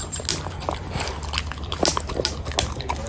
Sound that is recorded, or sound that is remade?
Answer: recorded